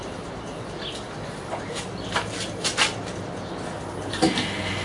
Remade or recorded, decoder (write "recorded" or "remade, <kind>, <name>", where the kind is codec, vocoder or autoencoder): recorded